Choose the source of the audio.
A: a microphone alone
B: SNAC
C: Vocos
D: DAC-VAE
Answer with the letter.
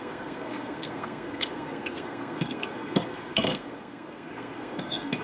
B